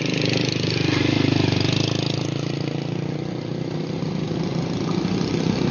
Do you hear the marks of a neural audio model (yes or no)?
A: no